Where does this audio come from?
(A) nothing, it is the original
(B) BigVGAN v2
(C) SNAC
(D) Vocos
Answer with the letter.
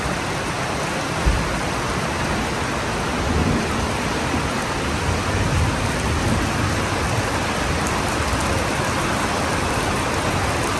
A